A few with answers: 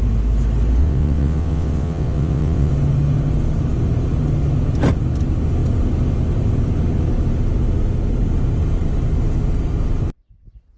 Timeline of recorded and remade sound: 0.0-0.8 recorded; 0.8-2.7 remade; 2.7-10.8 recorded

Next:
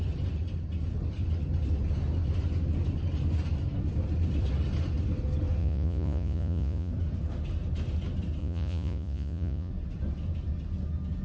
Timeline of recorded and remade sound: 0.0-5.6 recorded; 5.6-6.9 remade; 6.9-8.4 recorded; 8.4-9.7 remade; 9.7-11.2 recorded